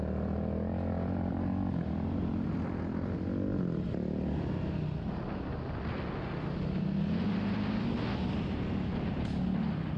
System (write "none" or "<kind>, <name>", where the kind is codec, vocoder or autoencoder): none